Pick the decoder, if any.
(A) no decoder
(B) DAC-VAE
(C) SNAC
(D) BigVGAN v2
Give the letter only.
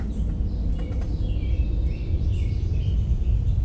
A